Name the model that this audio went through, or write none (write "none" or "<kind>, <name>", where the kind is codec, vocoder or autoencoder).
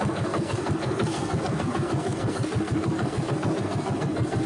codec, SNAC